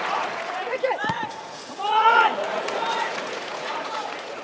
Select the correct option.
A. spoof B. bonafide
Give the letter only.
A